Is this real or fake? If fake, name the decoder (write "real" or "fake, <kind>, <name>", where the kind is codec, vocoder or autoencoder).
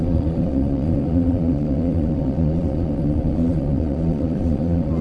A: fake, vocoder, Vocos